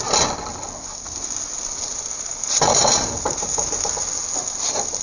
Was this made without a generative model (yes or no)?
yes